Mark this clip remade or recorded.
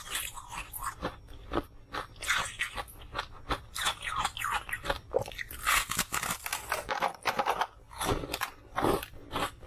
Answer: recorded